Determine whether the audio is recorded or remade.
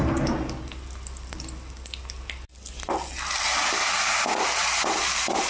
recorded